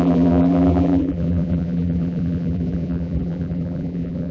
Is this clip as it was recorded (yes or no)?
no